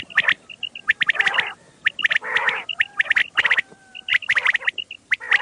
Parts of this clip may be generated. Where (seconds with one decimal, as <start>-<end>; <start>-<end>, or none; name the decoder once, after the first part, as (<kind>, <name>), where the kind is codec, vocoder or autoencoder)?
none